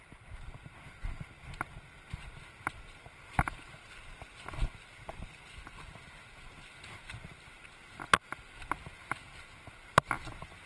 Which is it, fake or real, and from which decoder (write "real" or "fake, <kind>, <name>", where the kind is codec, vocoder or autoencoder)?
real